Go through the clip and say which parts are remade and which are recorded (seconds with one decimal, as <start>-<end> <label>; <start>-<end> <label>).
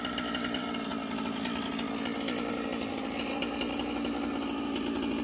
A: 0.0-5.2 recorded